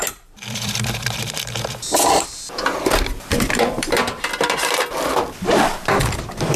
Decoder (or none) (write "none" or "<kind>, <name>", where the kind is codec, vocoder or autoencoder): vocoder, BigVGAN v2